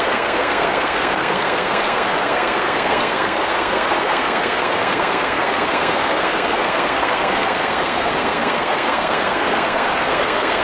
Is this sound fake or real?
fake